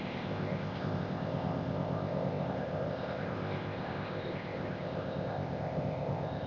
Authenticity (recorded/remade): remade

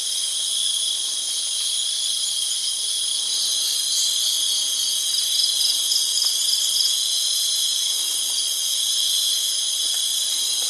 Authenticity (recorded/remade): recorded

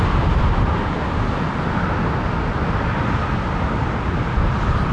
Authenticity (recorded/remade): recorded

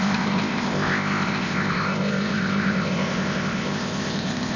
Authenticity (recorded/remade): remade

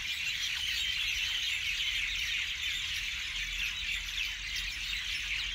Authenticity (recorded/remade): recorded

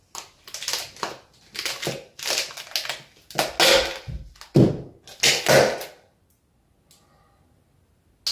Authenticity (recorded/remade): recorded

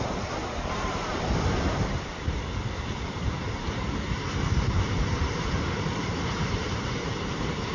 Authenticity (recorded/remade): remade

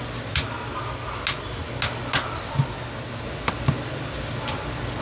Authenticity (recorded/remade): recorded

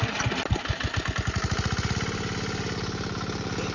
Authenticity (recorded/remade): recorded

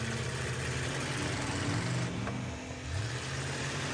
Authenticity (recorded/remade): recorded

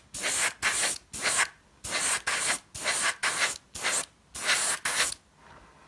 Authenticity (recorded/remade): recorded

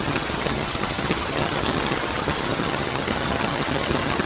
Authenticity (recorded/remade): remade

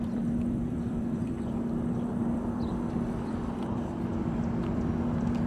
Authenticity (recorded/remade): remade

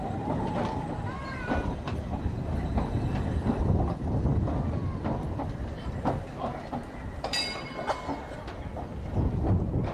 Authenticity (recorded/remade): recorded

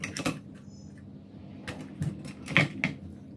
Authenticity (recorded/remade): recorded